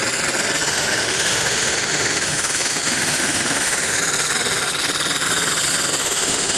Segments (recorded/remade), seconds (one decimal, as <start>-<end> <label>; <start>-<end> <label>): 0.0-0.7 recorded; 0.7-4.0 remade; 4.0-6.0 recorded; 6.0-6.6 remade